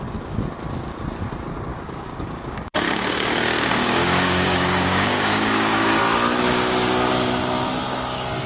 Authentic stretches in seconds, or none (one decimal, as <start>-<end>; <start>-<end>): 0.0-1.7; 6.0-8.5